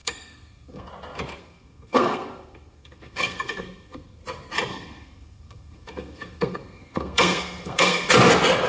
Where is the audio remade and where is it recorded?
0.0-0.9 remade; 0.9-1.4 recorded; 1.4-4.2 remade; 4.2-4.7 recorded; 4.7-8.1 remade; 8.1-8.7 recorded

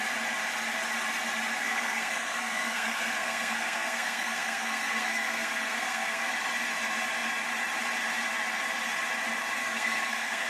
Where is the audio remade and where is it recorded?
0.0-1.6 recorded; 1.6-6.3 remade; 6.3-9.6 recorded; 9.6-10.5 remade

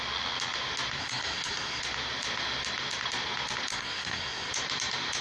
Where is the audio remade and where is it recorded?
0.0-1.0 recorded; 1.0-1.8 remade; 1.8-3.7 recorded; 3.7-4.5 remade; 4.5-5.2 recorded

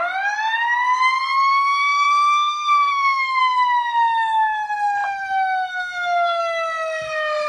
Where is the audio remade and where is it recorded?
0.0-1.5 recorded; 1.5-3.4 remade; 3.4-5.7 recorded; 5.7-6.4 remade; 6.4-7.5 recorded